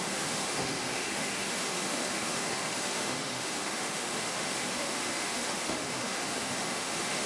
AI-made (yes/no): yes